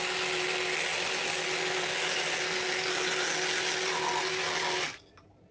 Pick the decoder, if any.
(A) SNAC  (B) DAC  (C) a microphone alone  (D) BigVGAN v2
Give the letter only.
C